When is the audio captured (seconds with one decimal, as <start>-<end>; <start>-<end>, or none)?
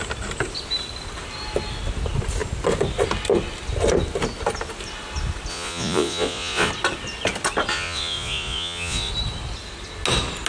0.0-5.5; 6.7-7.7; 9.1-10.5